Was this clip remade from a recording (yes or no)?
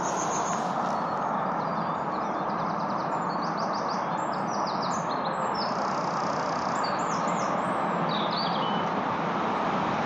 no